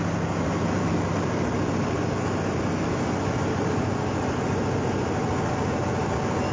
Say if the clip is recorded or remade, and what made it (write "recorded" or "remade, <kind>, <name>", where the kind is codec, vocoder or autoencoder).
recorded